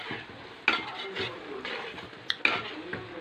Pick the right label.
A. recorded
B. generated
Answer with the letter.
A